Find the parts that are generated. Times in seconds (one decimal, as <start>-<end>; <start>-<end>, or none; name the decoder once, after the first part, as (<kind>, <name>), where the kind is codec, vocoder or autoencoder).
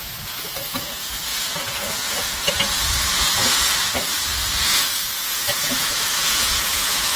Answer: 5.5-7.2 (vocoder, Vocos)